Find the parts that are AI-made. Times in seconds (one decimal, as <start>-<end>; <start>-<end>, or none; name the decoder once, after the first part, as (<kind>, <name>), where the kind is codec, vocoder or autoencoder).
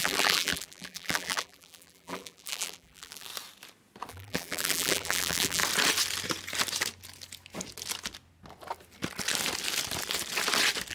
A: 0.0-3.3 (vocoder, BigVGAN v2); 4.1-5.6